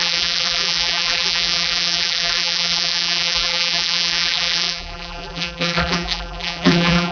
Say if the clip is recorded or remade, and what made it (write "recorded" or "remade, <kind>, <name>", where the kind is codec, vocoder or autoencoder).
remade, vocoder, BigVGAN v2